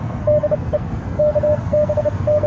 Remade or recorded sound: remade